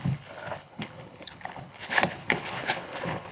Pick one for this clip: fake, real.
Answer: fake